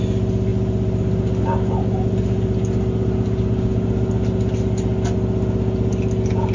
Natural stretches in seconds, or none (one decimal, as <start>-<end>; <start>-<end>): 0.0-6.5